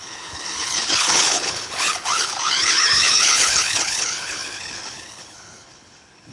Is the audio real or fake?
fake